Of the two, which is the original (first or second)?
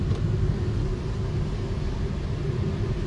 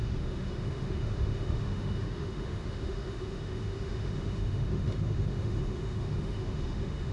first